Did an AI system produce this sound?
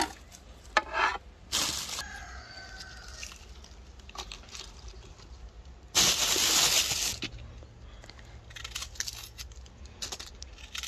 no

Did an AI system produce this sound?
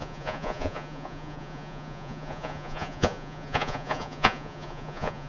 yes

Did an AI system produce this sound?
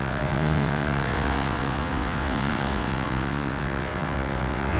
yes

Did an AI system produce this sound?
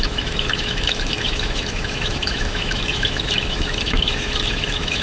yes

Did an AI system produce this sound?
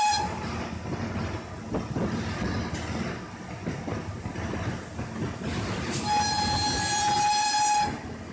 no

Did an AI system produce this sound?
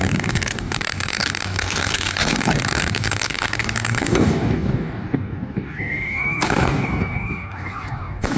yes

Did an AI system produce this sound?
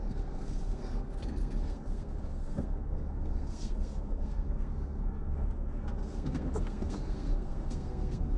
yes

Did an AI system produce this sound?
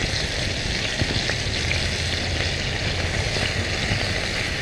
no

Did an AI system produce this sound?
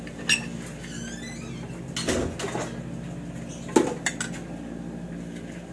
no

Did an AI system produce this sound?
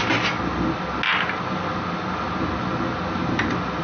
no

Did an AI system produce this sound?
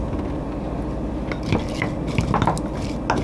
no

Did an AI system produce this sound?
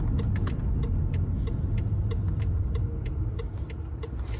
no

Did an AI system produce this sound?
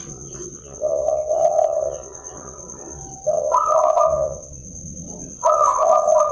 yes